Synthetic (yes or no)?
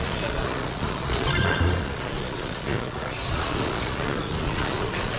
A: yes